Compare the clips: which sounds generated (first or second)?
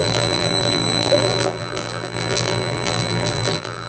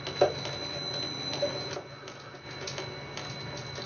first